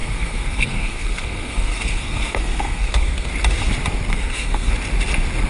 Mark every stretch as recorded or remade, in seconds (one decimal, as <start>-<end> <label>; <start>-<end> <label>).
0.0-3.3 remade; 3.3-4.1 recorded; 4.1-4.7 remade; 4.7-5.5 recorded